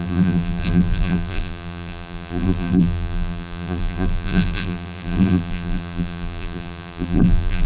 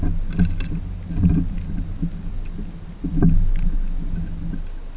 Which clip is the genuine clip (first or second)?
second